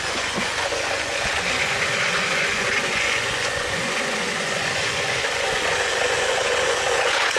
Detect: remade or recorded remade